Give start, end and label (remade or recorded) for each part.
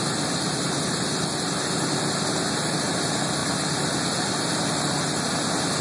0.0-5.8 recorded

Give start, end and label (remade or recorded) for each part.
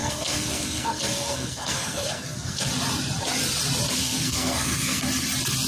0.0-2.7 remade; 2.7-4.0 recorded; 4.0-5.0 remade; 5.0-5.7 recorded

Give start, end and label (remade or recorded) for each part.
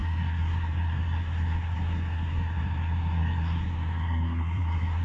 0.0-5.0 remade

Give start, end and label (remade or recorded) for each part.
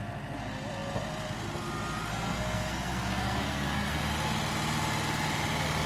0.0-2.1 recorded; 2.1-4.0 remade; 4.0-5.9 recorded